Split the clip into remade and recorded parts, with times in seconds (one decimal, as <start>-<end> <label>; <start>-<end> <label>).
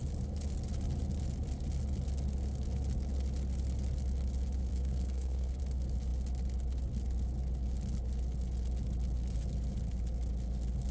0.0-4.7 recorded; 4.7-5.6 remade; 5.6-10.9 recorded